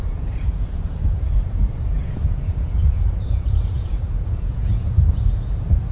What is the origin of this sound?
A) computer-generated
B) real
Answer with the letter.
A